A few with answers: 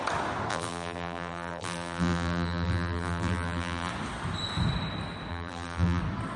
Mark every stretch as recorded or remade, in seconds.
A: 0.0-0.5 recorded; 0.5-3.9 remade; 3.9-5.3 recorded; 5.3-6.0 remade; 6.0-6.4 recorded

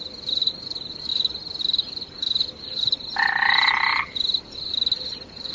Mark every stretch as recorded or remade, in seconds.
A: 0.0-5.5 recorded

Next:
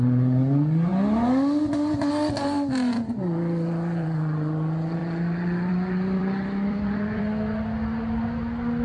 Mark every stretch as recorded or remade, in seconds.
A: 0.0-6.2 recorded; 6.2-7.2 remade; 7.2-8.8 recorded

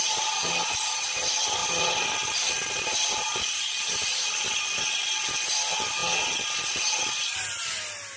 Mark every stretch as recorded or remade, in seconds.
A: 0.0-8.2 recorded

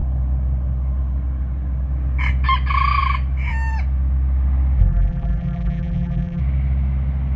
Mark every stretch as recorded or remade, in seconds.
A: 0.0-4.8 recorded; 4.8-6.4 remade; 6.4-7.4 recorded

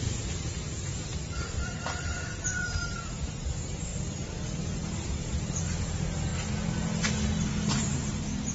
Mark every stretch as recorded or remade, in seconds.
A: 0.0-0.9 remade; 0.9-1.5 recorded; 1.5-3.9 remade; 3.9-4.6 recorded; 4.6-6.3 remade; 6.3-7.7 recorded; 7.7-8.5 remade